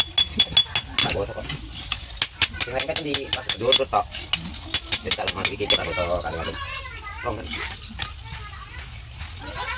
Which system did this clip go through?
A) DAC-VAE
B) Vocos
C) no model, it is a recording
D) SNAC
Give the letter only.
C